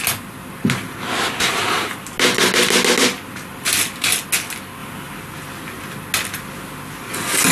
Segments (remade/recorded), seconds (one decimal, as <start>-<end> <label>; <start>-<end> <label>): 0.0-7.5 recorded